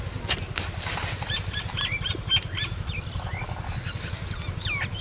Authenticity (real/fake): real